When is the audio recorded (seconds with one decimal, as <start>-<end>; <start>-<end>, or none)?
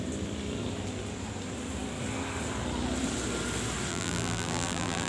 0.0-3.9